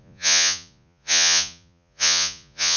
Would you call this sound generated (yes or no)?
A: yes